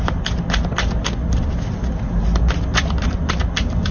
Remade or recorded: recorded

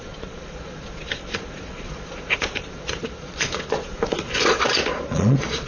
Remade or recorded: remade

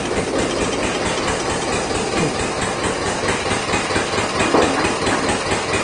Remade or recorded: recorded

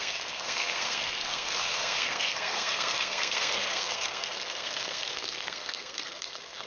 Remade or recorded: remade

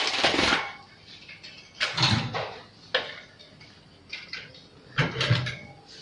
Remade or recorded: recorded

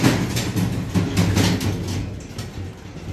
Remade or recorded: recorded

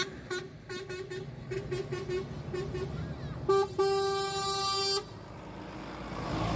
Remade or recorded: recorded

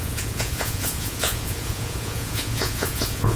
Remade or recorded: remade